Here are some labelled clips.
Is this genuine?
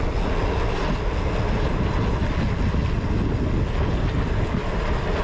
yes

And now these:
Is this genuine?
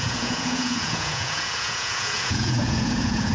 no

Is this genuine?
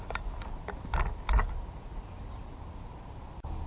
yes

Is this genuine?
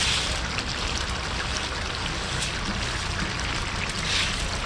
yes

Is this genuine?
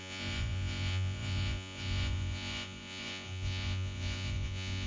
no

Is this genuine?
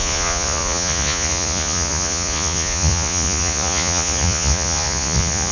no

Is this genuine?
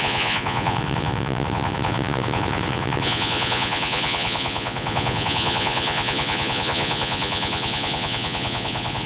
no